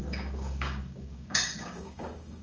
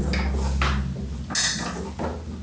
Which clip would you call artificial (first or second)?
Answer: first